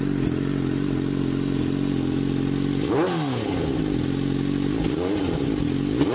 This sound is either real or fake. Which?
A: real